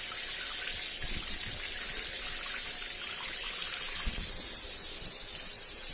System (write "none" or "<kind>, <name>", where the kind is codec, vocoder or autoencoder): none